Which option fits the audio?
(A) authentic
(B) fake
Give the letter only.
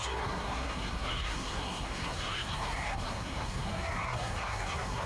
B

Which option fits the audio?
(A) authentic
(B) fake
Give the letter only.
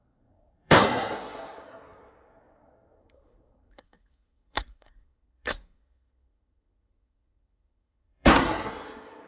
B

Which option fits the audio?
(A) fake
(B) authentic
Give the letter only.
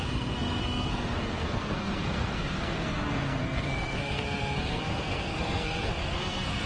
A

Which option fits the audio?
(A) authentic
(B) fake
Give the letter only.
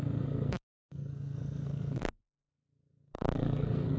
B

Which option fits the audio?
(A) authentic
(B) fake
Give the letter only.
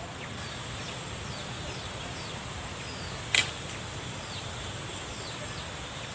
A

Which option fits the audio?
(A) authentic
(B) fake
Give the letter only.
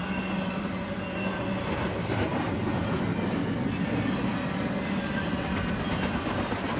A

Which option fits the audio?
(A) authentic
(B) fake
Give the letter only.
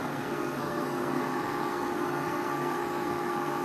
B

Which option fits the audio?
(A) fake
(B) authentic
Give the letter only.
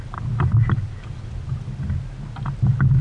B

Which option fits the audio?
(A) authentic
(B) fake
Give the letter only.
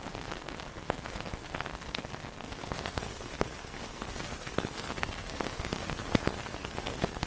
B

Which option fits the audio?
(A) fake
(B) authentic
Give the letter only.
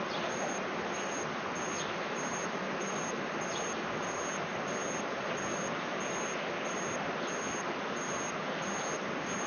B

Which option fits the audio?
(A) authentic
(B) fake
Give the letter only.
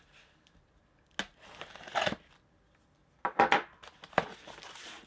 A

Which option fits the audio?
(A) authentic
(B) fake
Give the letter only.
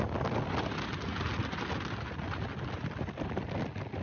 A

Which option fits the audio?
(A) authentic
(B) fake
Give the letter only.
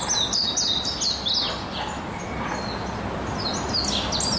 A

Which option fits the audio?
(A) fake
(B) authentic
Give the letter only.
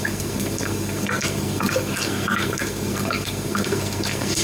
A